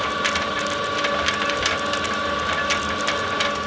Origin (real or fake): real